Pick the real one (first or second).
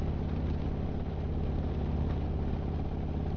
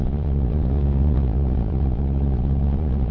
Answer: first